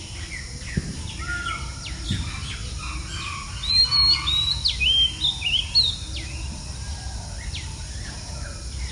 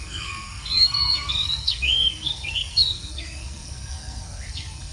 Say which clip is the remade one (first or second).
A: second